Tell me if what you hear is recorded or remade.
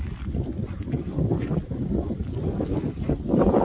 recorded